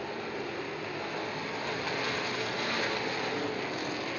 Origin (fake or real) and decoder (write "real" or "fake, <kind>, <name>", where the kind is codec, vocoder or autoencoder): real